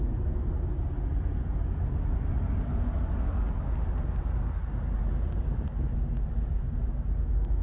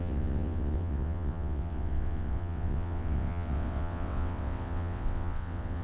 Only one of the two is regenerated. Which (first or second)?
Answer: second